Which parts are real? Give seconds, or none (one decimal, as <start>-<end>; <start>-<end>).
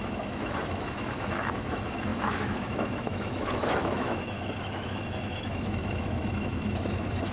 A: none